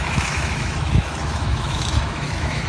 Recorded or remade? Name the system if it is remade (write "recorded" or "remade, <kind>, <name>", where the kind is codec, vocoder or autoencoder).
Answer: remade, autoencoder, DAC-VAE